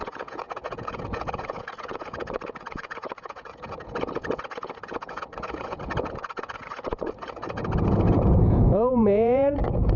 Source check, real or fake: fake